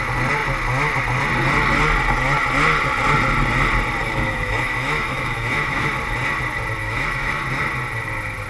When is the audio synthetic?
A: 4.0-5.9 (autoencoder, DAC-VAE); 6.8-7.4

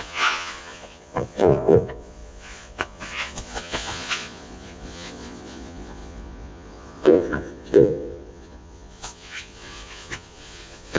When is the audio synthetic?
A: 0.0-11.0 (vocoder, Vocos)

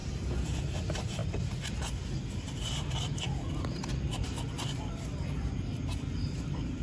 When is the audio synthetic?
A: none

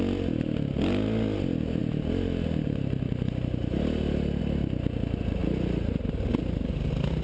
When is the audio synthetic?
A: none